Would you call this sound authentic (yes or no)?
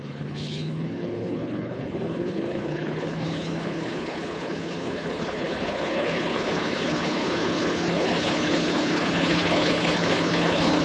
no